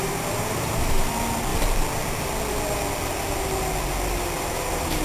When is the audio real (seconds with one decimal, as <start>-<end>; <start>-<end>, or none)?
1.5-4.5